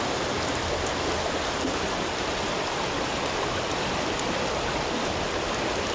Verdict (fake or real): real